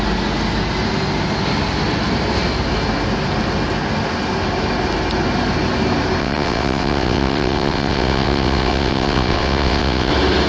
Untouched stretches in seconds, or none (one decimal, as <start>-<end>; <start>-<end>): 0.0-6.2; 10.1-10.5